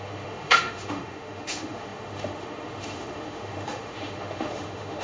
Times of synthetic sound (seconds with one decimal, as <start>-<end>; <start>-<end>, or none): 0.0-5.0